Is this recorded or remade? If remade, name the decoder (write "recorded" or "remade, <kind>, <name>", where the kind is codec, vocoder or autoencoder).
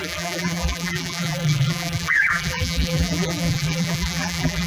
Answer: remade, vocoder, BigVGAN v2